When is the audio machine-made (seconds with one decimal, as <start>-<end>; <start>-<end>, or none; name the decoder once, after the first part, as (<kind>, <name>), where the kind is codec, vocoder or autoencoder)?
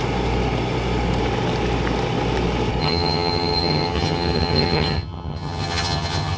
2.8-6.4 (vocoder, HiFi-GAN)